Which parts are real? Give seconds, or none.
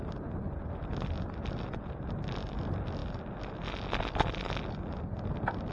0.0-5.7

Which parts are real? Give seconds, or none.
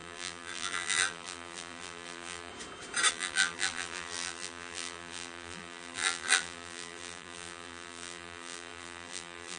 2.5-3.1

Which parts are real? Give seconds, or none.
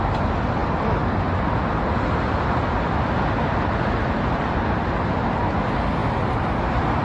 0.0-7.0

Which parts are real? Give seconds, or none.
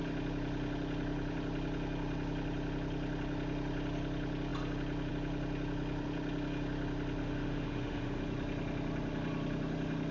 0.0-7.2; 8.2-10.1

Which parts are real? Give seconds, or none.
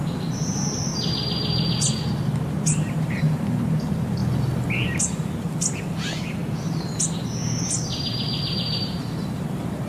0.9-2.5; 4.2-5.0; 6.4-8.5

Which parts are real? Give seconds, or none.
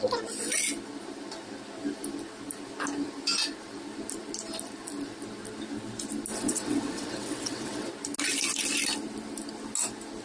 0.0-6.3; 7.9-10.2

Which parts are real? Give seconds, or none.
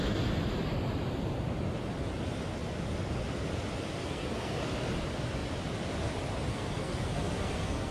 0.0-4.0; 4.7-6.5